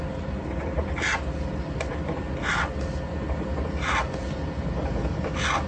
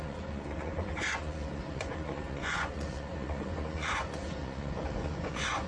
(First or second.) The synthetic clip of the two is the second